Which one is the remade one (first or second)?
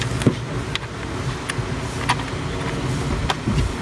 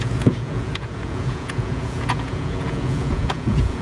second